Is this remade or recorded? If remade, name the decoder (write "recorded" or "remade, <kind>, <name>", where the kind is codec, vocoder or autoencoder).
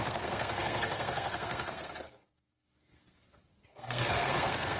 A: remade, codec, SNAC